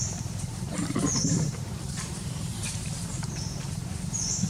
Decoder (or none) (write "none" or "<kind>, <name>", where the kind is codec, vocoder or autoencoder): vocoder, BigVGAN v2